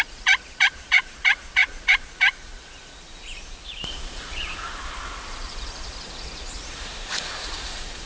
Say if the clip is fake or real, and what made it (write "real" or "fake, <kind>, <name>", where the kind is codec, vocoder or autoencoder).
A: fake, vocoder, Vocos